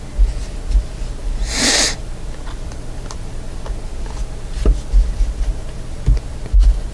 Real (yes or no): yes